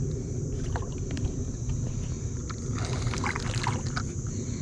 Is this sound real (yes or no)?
yes